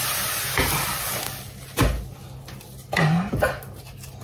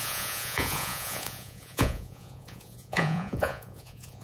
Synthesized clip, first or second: second